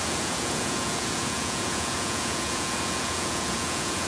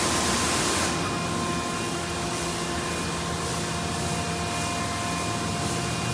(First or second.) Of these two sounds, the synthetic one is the first